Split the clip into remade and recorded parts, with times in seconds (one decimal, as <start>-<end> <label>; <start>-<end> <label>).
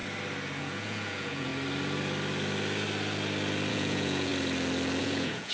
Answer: 0.0-0.6 recorded; 0.6-1.5 remade; 1.5-3.7 recorded; 3.7-4.3 remade; 4.3-5.0 recorded; 5.0-5.5 remade